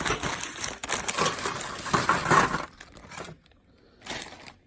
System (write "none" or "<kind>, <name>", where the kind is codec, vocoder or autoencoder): none